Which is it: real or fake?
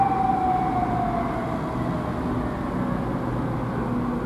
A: real